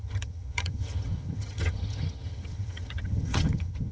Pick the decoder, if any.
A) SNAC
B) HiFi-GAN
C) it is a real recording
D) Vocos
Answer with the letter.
B